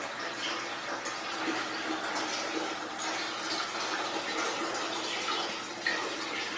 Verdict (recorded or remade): recorded